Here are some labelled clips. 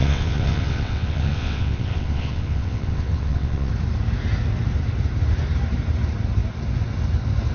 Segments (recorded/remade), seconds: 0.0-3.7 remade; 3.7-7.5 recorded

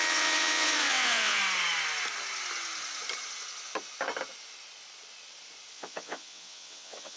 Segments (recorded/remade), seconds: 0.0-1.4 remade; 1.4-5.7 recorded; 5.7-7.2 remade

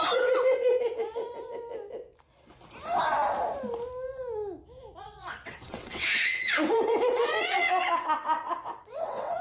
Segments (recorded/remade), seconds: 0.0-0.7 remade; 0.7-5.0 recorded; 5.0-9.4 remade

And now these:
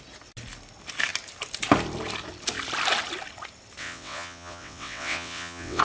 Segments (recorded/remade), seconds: 0.0-3.8 recorded; 3.8-5.8 remade

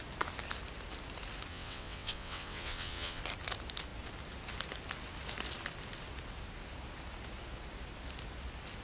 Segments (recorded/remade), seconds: 0.0-1.5 recorded; 1.5-3.2 remade; 3.2-8.8 recorded

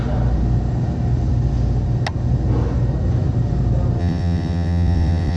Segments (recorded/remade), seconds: 0.0-4.0 recorded; 4.0-5.4 remade

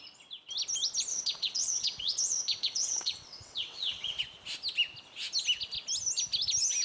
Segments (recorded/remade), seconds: 0.0-1.1 recorded; 1.1-4.2 remade; 4.2-6.8 recorded